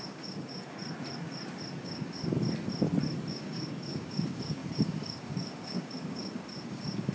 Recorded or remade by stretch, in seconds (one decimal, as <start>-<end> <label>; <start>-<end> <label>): 0.0-0.8 remade; 0.8-1.8 recorded; 1.8-2.2 remade; 2.2-3.3 recorded; 3.3-7.1 remade